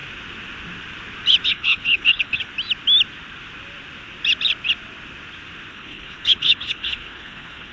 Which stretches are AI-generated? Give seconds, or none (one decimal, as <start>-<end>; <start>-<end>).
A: 1.5-2.5; 5.7-7.7